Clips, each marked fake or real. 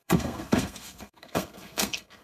fake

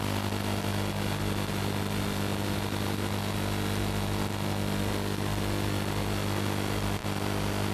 real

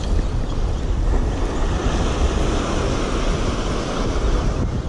real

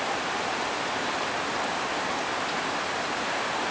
fake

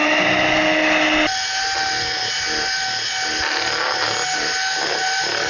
real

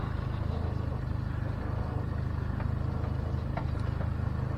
real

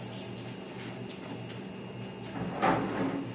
real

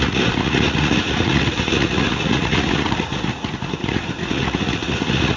fake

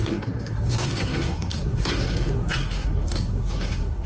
fake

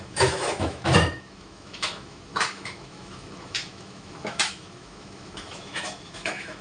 fake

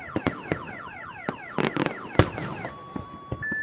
real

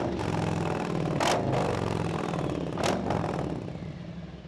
real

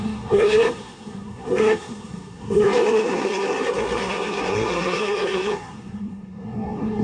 fake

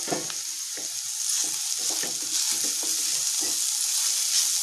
real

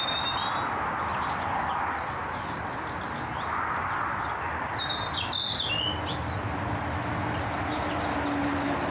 real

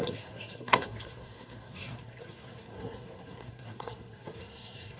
fake